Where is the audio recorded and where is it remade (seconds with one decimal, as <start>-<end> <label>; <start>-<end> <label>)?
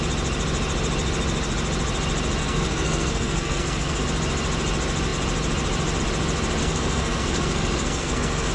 0.0-2.4 recorded; 2.4-4.0 remade; 4.0-6.6 recorded; 6.6-8.5 remade